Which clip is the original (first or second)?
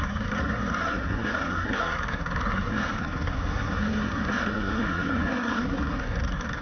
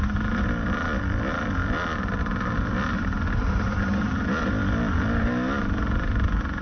second